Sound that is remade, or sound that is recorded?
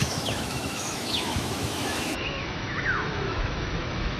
remade